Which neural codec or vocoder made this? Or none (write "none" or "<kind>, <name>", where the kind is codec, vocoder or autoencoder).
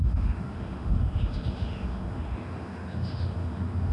autoencoder, DAC-VAE